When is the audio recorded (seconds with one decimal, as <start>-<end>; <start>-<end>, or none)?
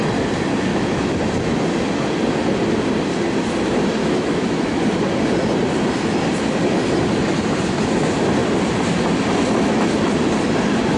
0.0-0.7; 1.2-4.0; 4.8-11.0